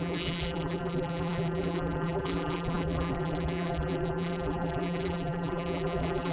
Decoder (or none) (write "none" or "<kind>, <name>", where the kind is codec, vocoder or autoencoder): vocoder, BigVGAN v2